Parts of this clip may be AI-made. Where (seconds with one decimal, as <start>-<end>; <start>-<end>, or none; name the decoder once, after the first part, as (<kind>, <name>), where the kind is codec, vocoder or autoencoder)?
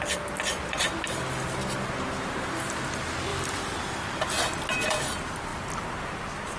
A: 3.3-3.8 (vocoder, BigVGAN v2)